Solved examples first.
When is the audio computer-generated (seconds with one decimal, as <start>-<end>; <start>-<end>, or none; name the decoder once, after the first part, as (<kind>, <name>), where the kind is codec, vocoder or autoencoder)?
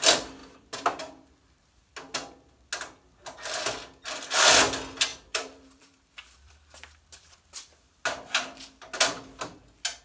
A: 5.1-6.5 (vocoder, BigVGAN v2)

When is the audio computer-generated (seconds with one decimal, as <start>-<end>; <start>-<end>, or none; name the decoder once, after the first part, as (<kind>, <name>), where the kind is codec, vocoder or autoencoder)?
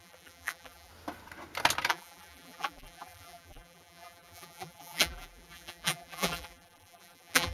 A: 0.0-0.9 (vocoder, BigVGAN v2); 1.9-7.5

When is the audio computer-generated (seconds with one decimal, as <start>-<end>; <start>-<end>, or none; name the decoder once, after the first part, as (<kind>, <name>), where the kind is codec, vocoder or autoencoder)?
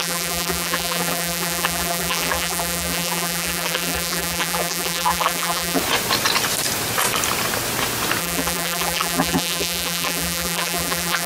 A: 0.0-5.8 (vocoder, BigVGAN v2); 8.2-11.3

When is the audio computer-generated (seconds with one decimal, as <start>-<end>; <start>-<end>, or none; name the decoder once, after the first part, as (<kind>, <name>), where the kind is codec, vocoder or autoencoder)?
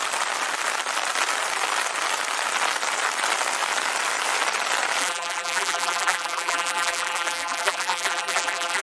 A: 5.0-8.8 (vocoder, BigVGAN v2)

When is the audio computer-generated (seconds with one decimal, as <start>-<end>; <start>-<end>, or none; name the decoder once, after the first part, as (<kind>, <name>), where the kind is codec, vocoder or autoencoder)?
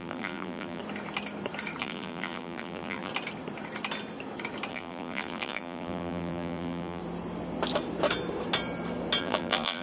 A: 0.0-0.8 (vocoder, BigVGAN v2); 1.8-3.1; 4.7-7.0; 9.2-9.8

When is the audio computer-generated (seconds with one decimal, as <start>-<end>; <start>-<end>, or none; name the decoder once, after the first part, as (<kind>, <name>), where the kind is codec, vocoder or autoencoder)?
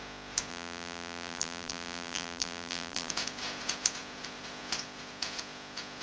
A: 0.5-3.1 (vocoder, BigVGAN v2)